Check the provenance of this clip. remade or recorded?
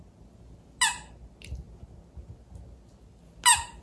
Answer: recorded